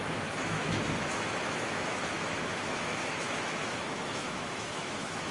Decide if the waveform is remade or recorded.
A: remade